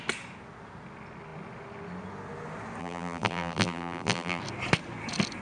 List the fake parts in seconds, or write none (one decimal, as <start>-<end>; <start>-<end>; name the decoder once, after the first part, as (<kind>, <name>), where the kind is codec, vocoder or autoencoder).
2.8-4.4 (vocoder, BigVGAN v2)